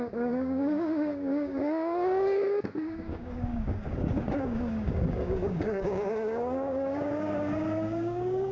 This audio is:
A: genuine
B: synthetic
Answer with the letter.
B